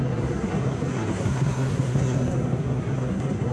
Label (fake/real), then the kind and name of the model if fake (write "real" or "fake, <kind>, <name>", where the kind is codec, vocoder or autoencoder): fake, codec, SNAC